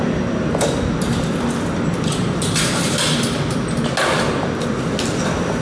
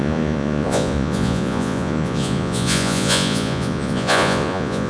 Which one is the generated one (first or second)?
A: second